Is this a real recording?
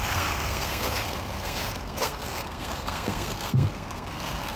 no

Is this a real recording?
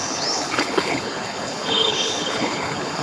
no